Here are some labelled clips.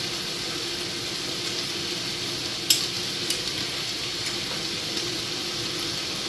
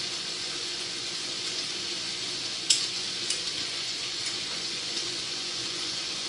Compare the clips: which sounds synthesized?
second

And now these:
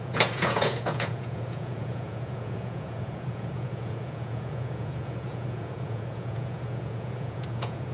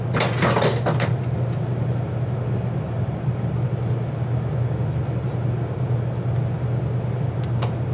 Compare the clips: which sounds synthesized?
first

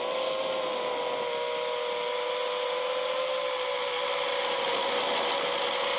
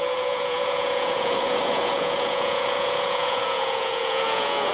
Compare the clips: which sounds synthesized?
second